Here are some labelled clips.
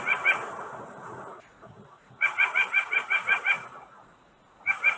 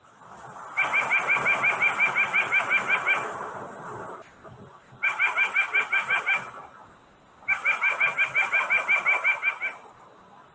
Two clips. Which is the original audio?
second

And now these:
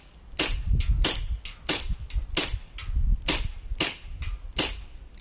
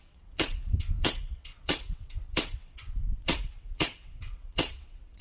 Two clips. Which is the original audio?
first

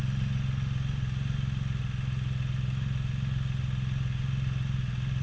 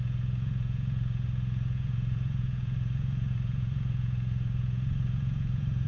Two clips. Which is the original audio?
first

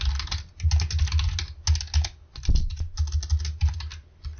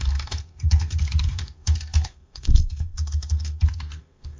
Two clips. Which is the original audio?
first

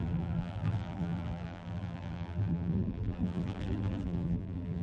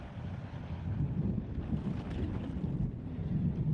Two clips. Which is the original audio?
second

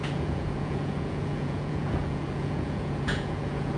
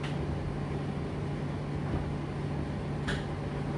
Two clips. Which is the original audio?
second